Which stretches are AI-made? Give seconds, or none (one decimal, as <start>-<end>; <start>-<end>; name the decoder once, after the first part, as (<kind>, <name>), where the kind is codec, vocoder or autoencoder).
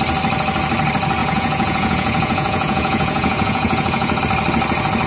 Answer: 1.2-4.2 (vocoder, Vocos)